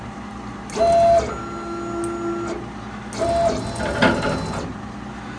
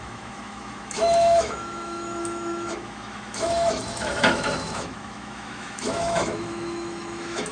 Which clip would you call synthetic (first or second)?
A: second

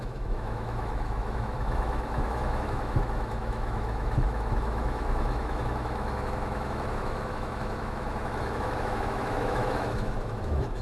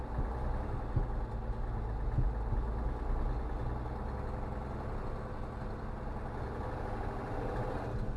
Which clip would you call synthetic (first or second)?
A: first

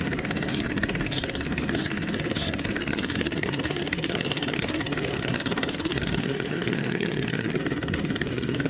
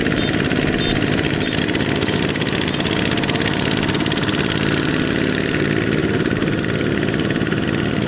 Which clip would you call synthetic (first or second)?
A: first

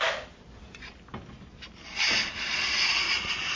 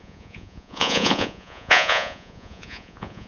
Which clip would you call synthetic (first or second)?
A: second